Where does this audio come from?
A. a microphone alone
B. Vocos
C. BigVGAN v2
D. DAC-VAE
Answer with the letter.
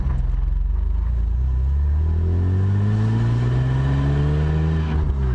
A